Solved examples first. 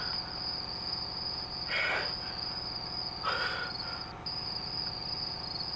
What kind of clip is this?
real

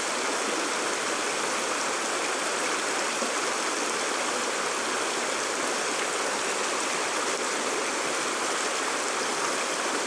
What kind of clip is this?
real